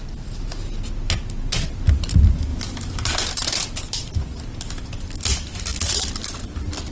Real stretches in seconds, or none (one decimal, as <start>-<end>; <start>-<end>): 0.0-6.9